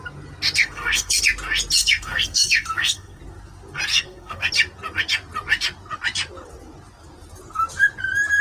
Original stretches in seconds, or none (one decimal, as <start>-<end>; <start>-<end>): 0.0-0.6; 1.2-1.8; 3.2-3.9; 4.5-8.4